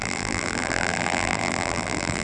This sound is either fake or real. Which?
fake